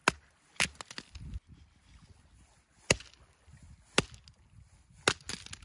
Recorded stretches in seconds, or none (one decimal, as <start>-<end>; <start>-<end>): 0.0-5.6